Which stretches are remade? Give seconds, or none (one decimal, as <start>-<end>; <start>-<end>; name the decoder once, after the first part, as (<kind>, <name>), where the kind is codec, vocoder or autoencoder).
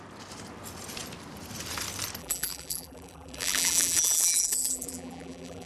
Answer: 2.2-5.7 (vocoder, BigVGAN v2)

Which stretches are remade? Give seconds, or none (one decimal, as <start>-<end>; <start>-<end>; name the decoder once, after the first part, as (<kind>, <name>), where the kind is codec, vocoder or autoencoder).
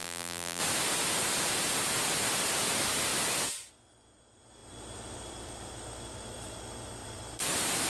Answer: 0.0-0.6 (vocoder, BigVGAN v2)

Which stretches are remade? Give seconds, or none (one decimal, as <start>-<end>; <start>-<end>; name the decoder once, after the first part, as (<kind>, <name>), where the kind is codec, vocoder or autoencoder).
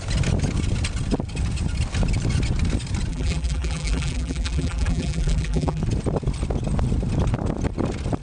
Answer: 3.1-5.8 (vocoder, BigVGAN v2)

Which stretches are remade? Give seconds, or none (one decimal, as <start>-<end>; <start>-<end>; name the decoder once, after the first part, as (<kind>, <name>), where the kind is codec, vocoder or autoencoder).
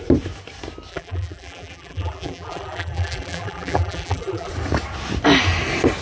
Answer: 0.9-4.5 (vocoder, BigVGAN v2)